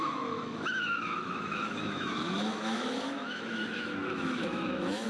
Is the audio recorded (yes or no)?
no